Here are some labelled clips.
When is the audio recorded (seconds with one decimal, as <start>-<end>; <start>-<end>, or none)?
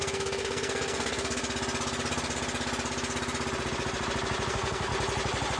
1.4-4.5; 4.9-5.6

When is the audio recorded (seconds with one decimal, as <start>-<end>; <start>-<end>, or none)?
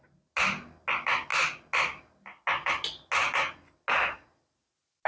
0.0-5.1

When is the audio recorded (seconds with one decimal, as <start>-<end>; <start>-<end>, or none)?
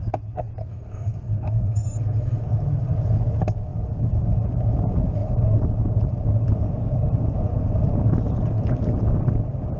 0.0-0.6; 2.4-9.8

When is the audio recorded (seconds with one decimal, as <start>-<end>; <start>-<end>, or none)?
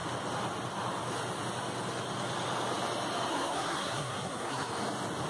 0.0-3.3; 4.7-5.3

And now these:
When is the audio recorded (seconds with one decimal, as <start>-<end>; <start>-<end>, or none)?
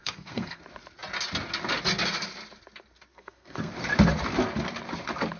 0.6-3.1; 3.7-5.4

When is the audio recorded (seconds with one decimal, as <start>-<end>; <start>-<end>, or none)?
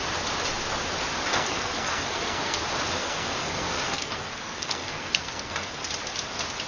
0.0-1.3; 2.6-3.0; 5.9-6.7